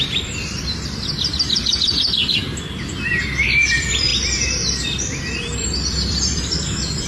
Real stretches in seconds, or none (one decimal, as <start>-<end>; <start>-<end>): none